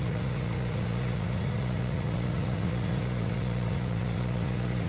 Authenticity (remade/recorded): remade